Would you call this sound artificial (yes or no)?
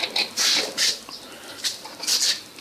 no